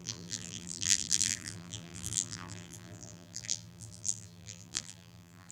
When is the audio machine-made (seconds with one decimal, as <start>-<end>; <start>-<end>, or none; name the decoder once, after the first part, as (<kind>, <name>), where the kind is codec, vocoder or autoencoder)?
0.0-5.5 (vocoder, BigVGAN v2)